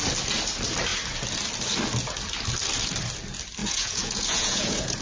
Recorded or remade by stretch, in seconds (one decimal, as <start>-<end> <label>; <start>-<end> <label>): 0.0-3.6 recorded; 3.6-5.0 remade